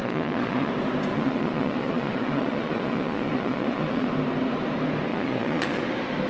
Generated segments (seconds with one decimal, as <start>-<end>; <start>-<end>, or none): 0.0-0.7; 1.1-4.1; 5.1-5.8